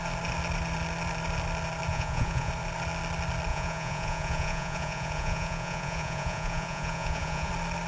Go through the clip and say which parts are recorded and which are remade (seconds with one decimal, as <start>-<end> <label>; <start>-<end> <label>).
0.0-1.9 recorded; 1.9-2.5 remade; 2.5-3.5 recorded; 3.5-7.5 remade; 7.5-7.9 recorded